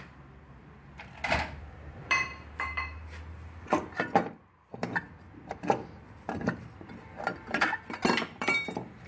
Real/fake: fake